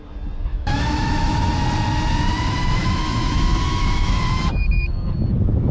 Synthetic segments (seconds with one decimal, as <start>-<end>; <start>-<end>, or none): 0.5-1.5; 2.8-5.1